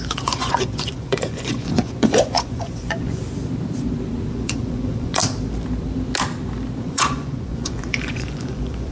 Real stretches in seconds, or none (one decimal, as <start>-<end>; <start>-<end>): 3.2-4.3; 5.2-6.8